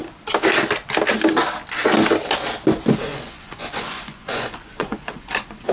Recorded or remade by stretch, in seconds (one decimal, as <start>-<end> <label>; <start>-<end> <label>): 0.0-3.0 recorded; 3.0-5.7 remade